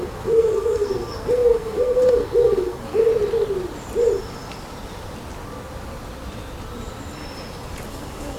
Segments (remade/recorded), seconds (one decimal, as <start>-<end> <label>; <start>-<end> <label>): 0.0-3.1 remade; 3.1-7.9 recorded; 7.9-8.4 remade